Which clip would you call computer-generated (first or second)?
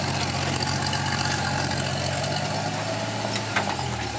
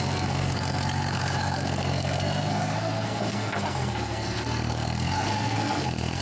second